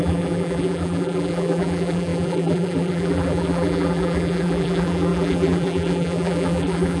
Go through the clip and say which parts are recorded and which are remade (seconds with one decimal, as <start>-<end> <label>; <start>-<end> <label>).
0.0-7.0 remade